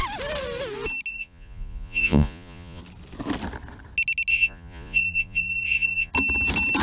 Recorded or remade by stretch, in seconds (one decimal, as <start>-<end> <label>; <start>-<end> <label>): 0.0-1.1 recorded; 1.1-2.8 remade; 2.8-4.3 recorded; 4.3-6.1 remade; 6.1-6.8 recorded